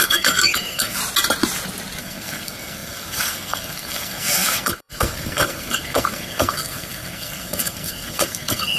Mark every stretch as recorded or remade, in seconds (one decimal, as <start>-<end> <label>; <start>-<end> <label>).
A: 0.0-1.0 remade; 1.0-2.0 recorded; 2.0-8.8 remade